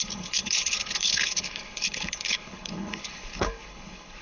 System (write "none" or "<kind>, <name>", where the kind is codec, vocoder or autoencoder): codec, HILCodec